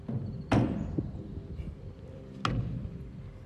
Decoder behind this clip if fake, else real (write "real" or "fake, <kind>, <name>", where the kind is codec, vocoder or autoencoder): real